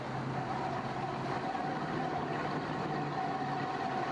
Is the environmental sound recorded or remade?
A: recorded